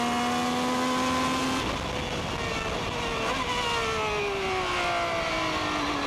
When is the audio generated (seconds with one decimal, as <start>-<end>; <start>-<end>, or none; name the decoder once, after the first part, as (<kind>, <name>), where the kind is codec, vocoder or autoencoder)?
none